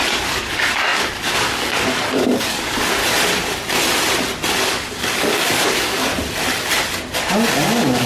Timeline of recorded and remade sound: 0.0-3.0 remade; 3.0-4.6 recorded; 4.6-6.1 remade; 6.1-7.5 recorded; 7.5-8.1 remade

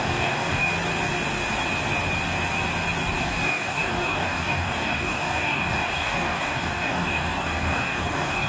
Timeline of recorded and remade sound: 0.0-0.7 remade; 0.7-3.2 recorded; 3.2-8.5 remade